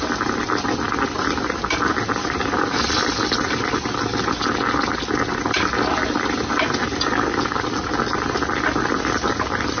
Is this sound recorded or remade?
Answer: recorded